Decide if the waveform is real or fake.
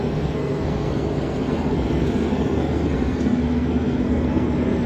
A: fake